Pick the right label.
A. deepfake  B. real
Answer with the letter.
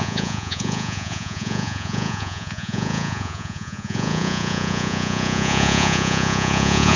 A